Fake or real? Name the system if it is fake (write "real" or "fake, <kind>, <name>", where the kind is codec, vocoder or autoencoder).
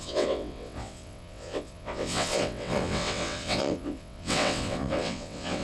fake, vocoder, WaveNeXt